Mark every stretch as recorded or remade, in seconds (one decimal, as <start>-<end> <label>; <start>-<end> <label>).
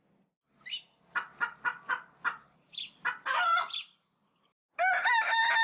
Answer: 0.0-5.6 recorded